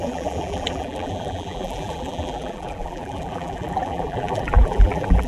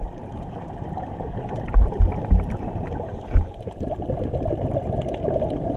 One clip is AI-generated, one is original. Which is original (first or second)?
second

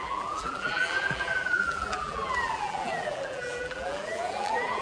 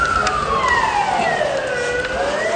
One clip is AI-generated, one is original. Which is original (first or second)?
second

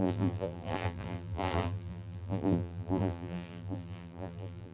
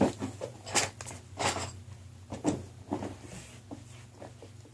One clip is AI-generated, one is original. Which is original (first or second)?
second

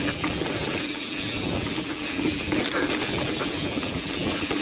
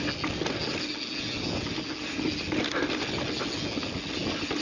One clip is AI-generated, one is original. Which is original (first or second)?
second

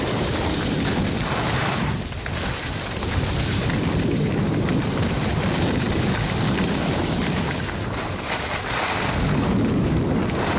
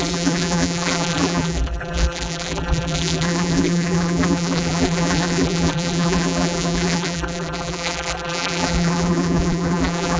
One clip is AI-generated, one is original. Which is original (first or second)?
first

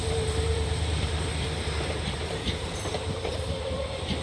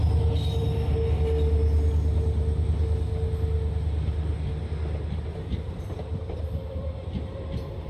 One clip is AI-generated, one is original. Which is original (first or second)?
second